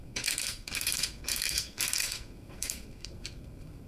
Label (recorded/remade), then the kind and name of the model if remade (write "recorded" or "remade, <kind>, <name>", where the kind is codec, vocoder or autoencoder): remade, codec, SNAC